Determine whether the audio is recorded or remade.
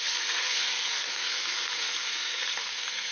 remade